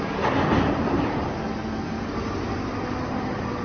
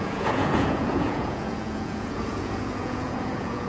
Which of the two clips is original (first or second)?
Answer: first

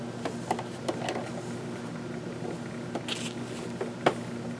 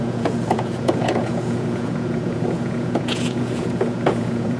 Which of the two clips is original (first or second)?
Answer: first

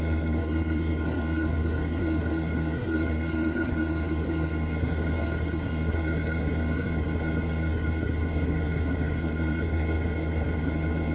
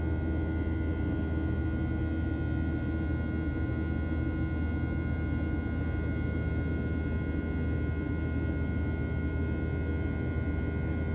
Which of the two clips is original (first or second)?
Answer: second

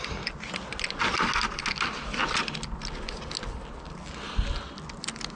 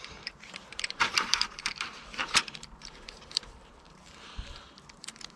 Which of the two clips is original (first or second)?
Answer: first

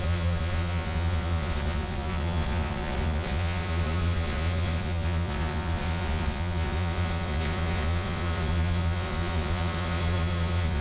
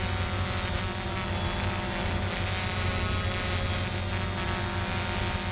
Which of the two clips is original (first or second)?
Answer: second